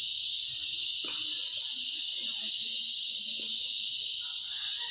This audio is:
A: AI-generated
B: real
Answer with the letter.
B